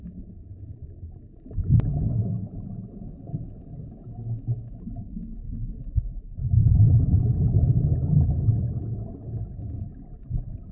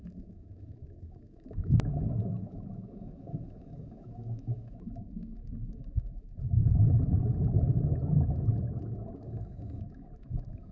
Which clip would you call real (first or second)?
first